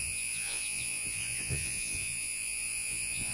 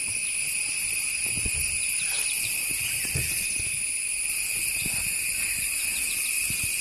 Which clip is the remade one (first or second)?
first